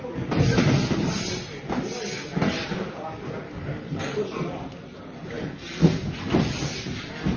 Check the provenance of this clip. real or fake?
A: real